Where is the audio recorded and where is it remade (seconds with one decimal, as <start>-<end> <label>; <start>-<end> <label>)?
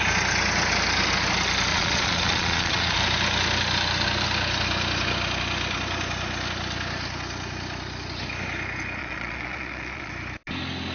0.0-1.7 recorded; 1.7-3.0 remade; 3.0-9.0 recorded; 9.0-10.1 remade; 10.1-10.9 recorded